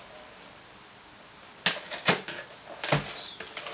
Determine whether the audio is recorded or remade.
recorded